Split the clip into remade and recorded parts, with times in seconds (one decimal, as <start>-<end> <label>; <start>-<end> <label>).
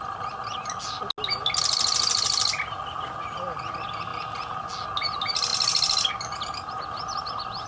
0.0-7.7 recorded